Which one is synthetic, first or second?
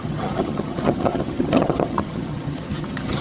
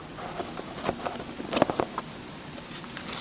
first